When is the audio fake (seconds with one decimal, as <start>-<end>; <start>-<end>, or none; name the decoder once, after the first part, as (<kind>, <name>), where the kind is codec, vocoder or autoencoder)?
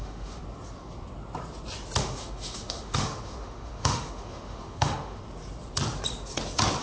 0.0-0.4 (autoencoder, DAC-VAE); 2.0-5.2